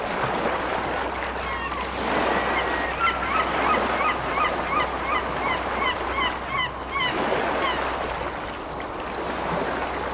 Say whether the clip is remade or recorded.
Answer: recorded